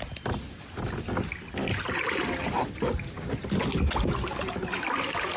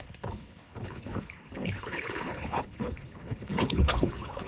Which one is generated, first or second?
second